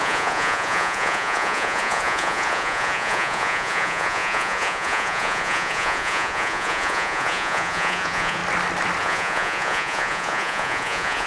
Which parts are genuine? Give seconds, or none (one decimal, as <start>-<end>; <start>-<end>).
8.4-9.0